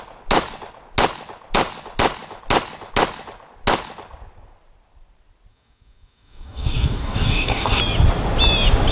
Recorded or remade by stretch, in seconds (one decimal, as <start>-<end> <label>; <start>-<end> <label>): 0.0-5.5 recorded; 5.5-7.8 remade; 7.8-8.9 recorded